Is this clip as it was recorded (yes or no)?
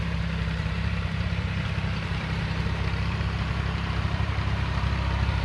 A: no